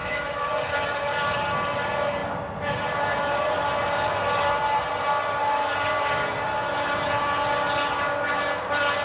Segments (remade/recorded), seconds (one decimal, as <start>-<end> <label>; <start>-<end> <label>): 0.0-0.5 remade; 0.5-9.0 recorded